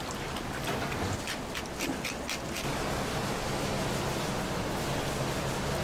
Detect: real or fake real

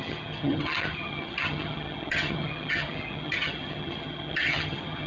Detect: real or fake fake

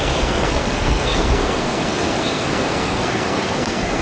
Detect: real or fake fake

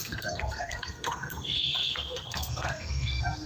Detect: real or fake fake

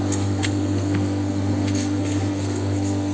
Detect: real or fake fake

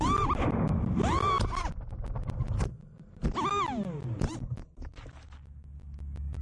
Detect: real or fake real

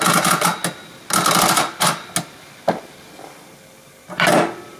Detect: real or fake real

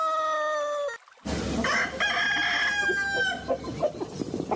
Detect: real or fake real